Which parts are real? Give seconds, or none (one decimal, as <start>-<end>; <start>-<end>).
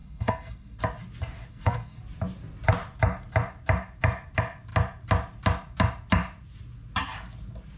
0.8-1.5; 2.0-7.8